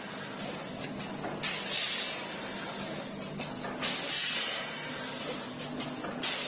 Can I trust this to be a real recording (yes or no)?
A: yes